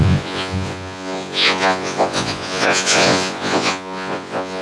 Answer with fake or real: fake